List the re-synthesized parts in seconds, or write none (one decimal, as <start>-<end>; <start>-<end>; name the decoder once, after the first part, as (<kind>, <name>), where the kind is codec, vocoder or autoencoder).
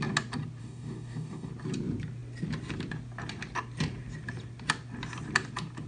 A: 0.6-1.5 (codec, DAC)